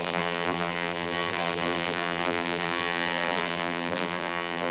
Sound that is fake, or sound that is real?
fake